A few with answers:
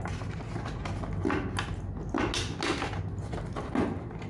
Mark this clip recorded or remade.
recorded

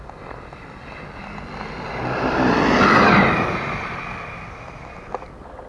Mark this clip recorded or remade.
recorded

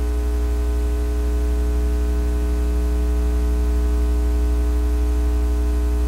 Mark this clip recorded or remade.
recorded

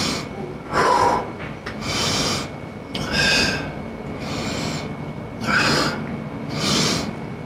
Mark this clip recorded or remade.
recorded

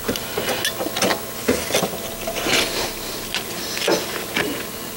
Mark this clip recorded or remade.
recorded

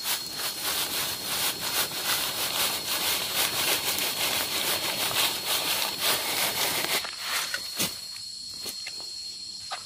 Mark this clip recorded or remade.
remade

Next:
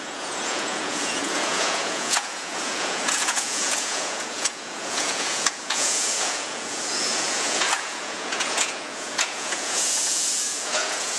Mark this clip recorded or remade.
remade